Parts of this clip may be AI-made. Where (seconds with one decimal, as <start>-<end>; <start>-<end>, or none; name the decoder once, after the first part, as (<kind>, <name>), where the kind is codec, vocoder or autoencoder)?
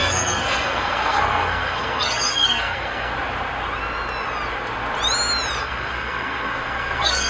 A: 0.0-3.1 (codec, SNAC); 5.6-7.3